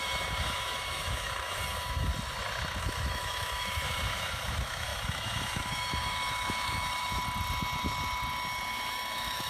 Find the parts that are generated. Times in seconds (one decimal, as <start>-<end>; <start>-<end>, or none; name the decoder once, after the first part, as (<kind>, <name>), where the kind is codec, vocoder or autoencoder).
0.0-2.1 (autoencoder, DAC-VAE); 2.8-7.2; 8.7-9.5